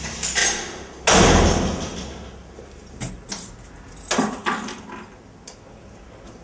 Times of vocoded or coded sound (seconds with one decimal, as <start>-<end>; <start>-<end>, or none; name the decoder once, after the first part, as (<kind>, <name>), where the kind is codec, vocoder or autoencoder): none